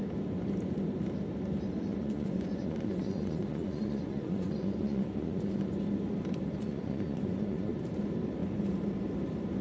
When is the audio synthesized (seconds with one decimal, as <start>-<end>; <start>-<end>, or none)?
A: 1.9-5.7; 6.6-7.7